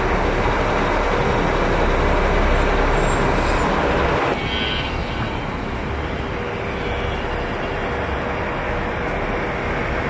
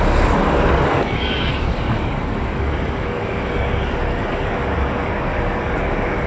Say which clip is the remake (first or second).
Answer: second